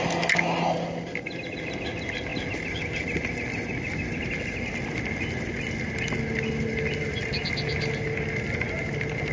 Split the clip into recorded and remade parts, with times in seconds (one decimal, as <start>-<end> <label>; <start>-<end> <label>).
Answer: 0.0-9.3 recorded